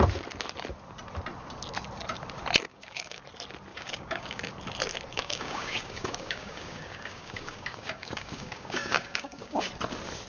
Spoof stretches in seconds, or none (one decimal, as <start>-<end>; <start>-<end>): 2.7-3.2; 3.7-4.5; 5.1-9.7